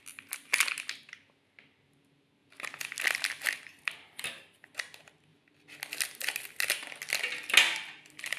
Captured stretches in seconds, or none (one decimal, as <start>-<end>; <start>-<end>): 0.0-8.4